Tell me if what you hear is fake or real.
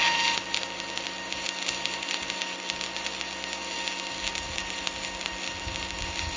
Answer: real